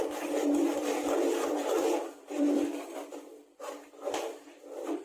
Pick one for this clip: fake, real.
fake